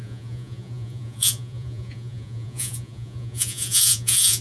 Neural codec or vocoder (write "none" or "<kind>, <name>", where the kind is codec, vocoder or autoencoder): vocoder, Vocos